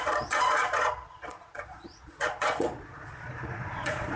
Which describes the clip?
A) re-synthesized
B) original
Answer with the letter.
A